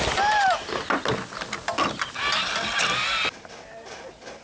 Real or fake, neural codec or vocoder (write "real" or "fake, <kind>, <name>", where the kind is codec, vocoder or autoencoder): real